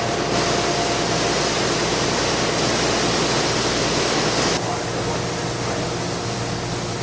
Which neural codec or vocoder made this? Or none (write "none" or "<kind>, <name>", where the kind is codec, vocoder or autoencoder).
none